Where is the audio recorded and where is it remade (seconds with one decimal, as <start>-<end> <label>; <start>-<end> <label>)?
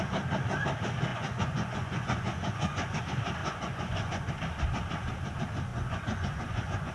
0.0-1.1 recorded; 1.1-3.0 remade; 3.0-3.4 recorded; 3.4-4.3 remade; 4.3-5.7 recorded; 5.7-6.9 remade